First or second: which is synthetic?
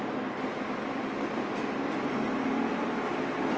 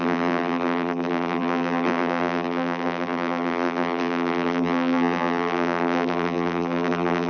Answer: second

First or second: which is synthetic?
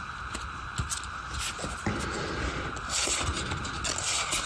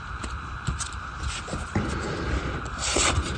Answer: second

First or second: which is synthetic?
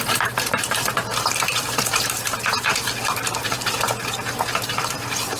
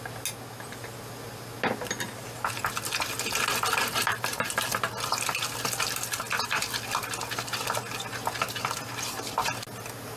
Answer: first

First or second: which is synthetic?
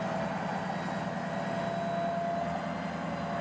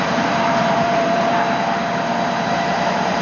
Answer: second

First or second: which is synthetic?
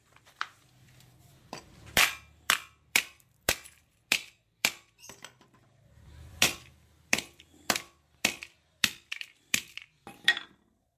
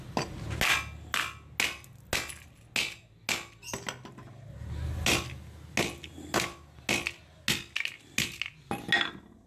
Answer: first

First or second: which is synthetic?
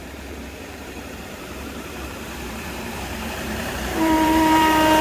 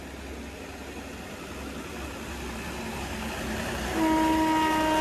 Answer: first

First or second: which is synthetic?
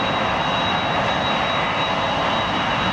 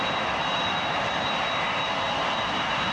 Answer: second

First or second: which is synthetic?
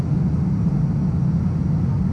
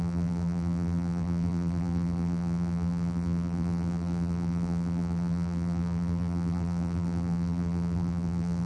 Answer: second